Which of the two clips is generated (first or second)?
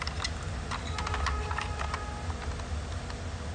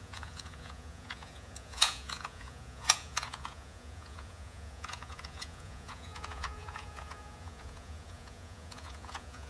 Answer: second